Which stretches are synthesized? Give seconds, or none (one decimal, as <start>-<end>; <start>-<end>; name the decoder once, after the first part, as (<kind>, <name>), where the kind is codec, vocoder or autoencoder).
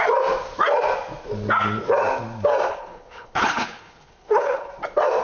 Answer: 2.7-4.7 (codec, HILCodec)